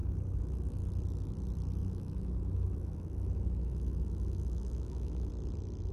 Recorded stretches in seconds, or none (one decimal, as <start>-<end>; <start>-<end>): 0.8-1.8; 5.3-5.9